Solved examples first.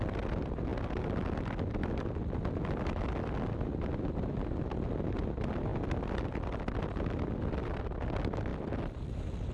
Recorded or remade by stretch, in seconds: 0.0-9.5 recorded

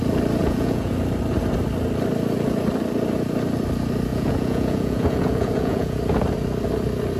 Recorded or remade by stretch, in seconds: 0.0-0.4 recorded; 0.4-0.9 remade; 0.9-4.1 recorded; 4.1-6.0 remade; 6.0-7.2 recorded

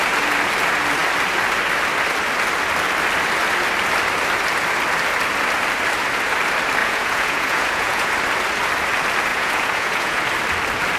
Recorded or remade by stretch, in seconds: 0.0-6.8 recorded; 6.8-8.1 remade; 8.1-9.3 recorded; 9.3-10.2 remade; 10.2-11.0 recorded

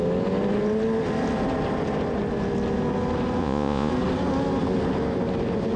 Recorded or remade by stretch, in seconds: 0.0-3.4 recorded; 3.4-3.9 remade; 3.9-5.8 recorded

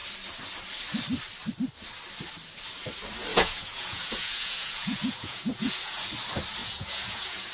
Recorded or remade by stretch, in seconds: 0.0-3.3 recorded; 3.3-6.1 remade; 6.1-6.6 recorded; 6.6-7.5 remade